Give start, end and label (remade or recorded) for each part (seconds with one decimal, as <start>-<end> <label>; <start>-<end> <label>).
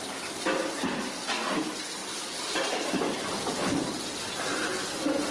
0.0-5.3 recorded